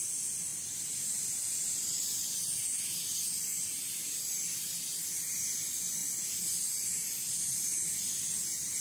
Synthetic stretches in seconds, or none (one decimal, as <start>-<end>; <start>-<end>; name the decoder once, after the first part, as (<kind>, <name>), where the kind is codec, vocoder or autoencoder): none